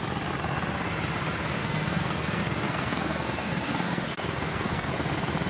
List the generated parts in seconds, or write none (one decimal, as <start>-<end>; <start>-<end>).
1.6-4.9